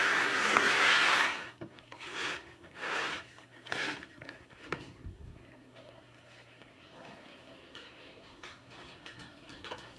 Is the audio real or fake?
fake